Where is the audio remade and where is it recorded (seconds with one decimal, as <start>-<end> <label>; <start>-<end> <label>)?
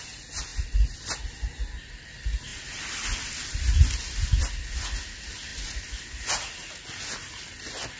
0.0-8.0 recorded